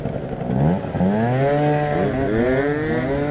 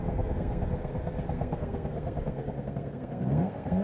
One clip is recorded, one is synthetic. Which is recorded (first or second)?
first